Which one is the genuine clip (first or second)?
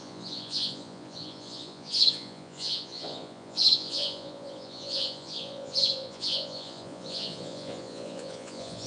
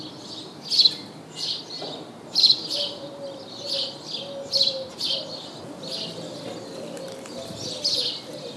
second